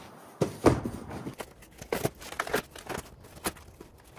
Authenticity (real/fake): real